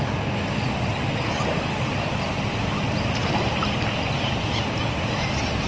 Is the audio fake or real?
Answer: real